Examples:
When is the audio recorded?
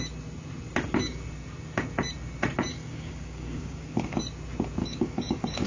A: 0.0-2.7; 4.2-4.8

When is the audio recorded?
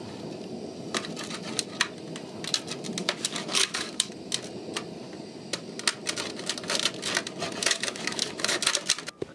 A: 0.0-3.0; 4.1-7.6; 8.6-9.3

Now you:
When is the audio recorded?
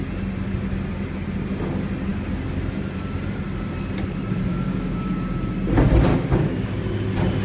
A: 0.0-4.5; 5.1-6.1; 6.8-7.4